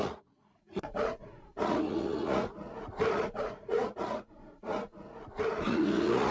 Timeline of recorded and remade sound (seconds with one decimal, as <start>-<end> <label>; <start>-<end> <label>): 0.0-6.3 remade